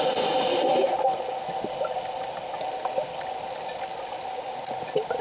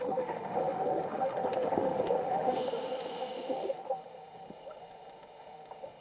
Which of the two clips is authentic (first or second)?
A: first